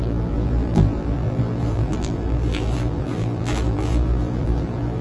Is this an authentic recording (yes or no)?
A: no